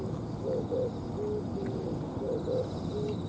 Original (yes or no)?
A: yes